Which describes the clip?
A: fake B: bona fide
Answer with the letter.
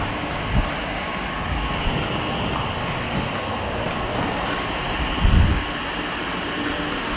B